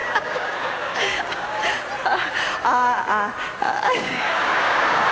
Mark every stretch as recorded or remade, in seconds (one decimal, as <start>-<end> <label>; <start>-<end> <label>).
0.0-1.6 remade; 1.6-3.6 recorded; 3.6-5.1 remade

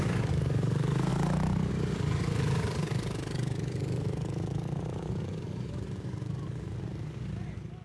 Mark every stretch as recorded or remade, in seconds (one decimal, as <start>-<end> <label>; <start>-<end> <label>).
0.0-7.8 remade

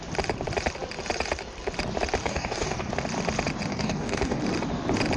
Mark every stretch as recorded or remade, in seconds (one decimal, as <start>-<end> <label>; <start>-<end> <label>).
0.0-2.2 recorded; 2.2-2.9 remade; 2.9-3.7 recorded; 3.7-4.4 remade; 4.4-5.2 recorded

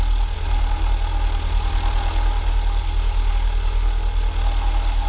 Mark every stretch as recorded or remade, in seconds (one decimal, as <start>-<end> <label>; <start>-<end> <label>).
0.0-5.1 recorded